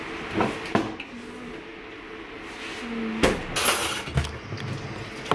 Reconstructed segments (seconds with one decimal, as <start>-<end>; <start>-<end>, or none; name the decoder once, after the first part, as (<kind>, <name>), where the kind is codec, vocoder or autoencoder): none